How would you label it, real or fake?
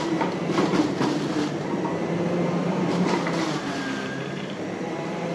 fake